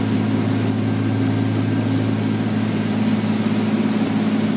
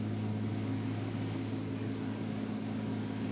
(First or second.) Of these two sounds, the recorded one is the first